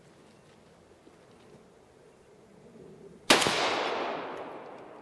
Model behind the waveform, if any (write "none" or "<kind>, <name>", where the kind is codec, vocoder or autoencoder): none